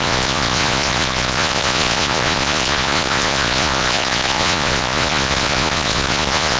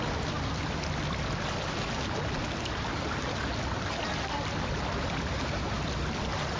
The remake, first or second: first